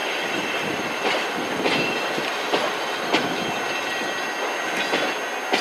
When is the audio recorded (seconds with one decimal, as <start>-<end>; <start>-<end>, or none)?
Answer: 3.4-5.6